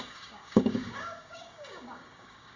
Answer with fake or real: fake